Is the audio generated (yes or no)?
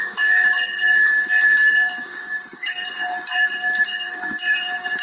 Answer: yes